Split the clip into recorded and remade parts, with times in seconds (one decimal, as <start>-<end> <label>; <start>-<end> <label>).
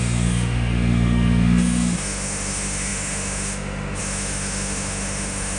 0.0-5.6 remade